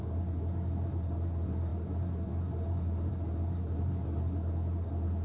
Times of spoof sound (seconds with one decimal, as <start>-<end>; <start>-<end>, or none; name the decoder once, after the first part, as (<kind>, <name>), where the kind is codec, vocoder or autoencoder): none